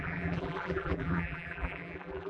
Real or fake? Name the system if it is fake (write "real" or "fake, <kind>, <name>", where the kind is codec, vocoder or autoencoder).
fake, vocoder, BigVGAN v2